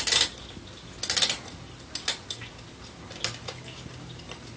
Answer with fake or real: real